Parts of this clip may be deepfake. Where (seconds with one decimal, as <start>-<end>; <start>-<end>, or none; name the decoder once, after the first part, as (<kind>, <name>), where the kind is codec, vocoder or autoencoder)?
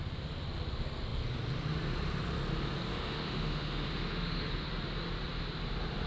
2.9-4.5 (autoencoder, DAC-VAE)